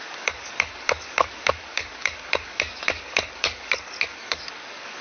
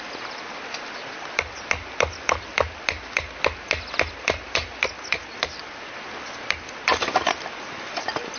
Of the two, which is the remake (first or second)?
first